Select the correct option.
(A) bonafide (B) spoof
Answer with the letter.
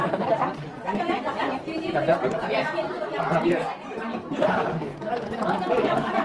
B